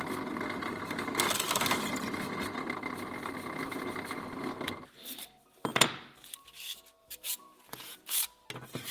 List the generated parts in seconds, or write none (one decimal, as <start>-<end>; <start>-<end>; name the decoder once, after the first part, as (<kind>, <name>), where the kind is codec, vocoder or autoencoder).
7.0-8.2 (vocoder, Vocos)